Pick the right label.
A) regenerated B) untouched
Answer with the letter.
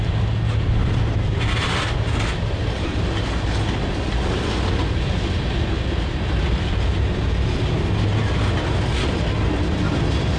B